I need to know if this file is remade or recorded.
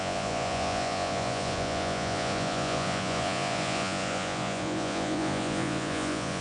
remade